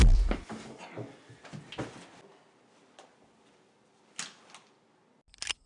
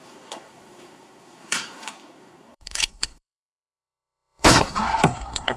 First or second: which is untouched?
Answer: first